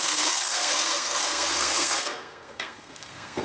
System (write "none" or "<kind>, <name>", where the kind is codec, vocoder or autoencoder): codec, SNAC